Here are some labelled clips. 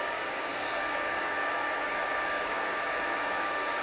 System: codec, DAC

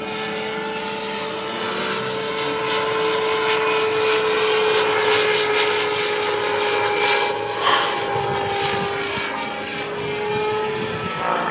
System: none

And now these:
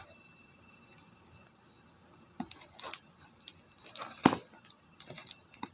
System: none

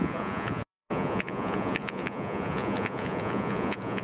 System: vocoder, Vocos